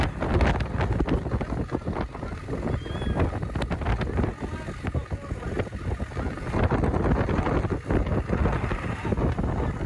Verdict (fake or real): real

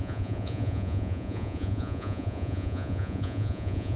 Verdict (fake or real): fake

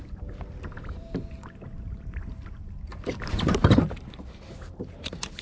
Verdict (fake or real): fake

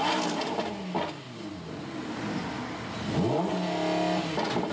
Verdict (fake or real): real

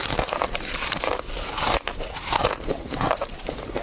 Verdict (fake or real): fake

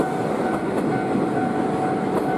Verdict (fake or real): real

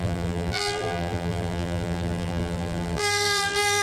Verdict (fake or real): fake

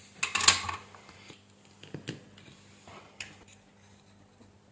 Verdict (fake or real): real